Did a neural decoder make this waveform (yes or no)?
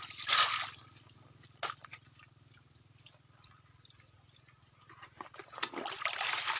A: no